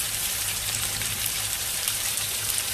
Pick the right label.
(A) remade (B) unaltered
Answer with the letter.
A